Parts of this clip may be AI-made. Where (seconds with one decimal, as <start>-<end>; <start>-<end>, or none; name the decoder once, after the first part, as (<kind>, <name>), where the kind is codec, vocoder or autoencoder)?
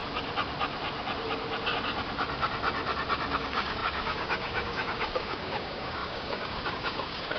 3.3-7.4 (codec, DAC)